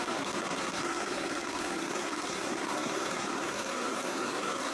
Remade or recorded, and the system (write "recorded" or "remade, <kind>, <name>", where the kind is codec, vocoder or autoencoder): remade, codec, SNAC